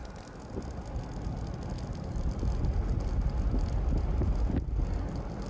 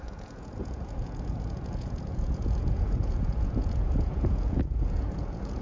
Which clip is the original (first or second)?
first